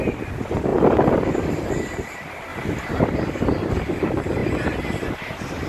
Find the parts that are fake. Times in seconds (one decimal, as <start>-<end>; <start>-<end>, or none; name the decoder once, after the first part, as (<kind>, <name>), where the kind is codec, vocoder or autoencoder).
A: 0.0-0.7 (vocoder, BigVGAN v2); 1.3-2.5; 3.0-4.4